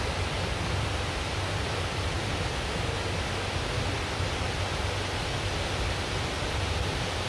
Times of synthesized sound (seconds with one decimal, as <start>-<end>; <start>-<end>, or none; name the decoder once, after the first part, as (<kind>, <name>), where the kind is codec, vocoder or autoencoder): none